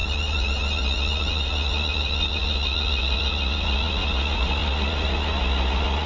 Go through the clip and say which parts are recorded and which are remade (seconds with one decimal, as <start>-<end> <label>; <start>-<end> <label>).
0.0-6.1 remade